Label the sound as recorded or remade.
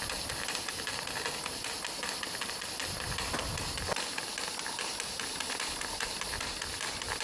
recorded